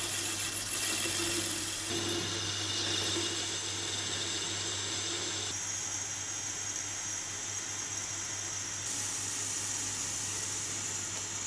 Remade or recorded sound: recorded